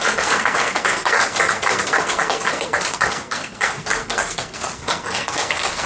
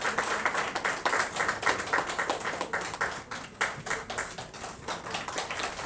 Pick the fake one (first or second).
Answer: first